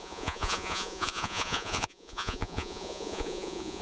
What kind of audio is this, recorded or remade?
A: remade